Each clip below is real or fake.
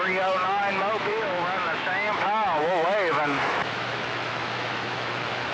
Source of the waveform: fake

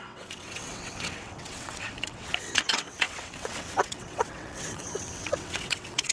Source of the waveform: fake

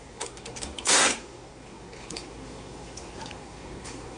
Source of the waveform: fake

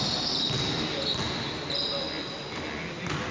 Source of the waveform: real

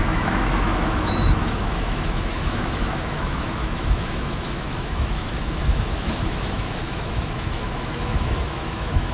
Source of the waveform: fake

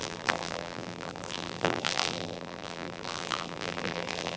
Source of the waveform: fake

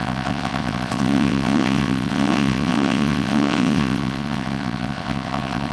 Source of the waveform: fake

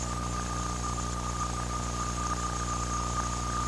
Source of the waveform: real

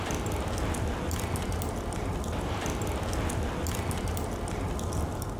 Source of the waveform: real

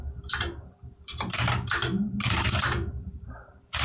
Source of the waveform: fake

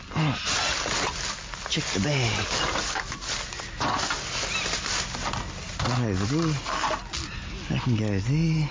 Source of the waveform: real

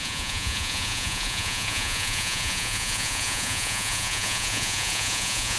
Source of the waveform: fake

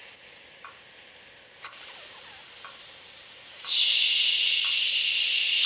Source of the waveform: real